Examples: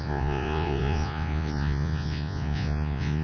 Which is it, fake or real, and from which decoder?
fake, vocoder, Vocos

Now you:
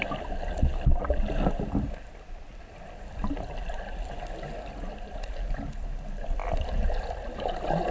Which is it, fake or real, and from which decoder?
real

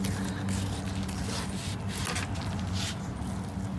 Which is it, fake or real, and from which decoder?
real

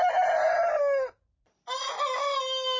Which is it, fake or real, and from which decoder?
real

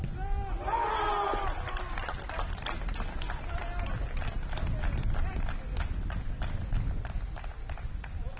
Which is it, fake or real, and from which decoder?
real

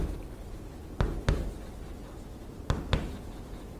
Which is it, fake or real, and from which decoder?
real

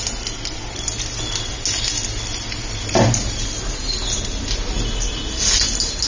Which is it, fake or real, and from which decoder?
real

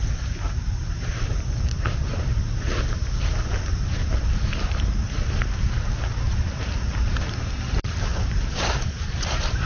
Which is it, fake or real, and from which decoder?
fake, vocoder, BigVGAN v2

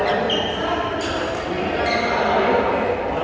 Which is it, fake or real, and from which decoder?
real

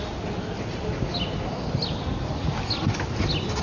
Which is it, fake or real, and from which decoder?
real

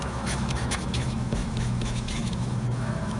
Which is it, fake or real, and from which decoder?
fake, autoencoder, DAC-VAE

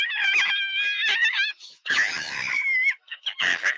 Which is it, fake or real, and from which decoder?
fake, autoencoder, DAC-VAE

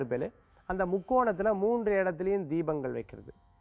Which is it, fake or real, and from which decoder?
fake, autoencoder, DAC-VAE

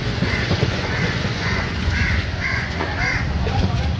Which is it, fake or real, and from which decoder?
fake, vocoder, Vocos